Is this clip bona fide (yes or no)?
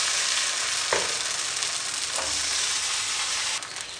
yes